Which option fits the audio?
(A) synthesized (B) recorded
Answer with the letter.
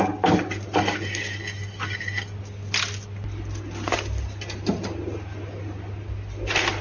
B